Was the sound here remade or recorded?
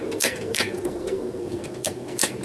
remade